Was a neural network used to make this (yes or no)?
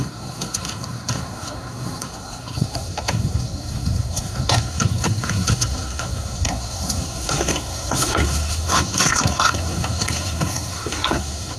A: yes